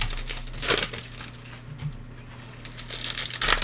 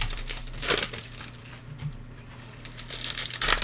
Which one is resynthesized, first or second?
second